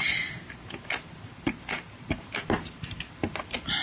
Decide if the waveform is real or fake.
real